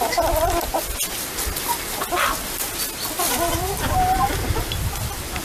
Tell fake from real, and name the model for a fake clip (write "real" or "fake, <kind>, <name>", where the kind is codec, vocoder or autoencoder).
real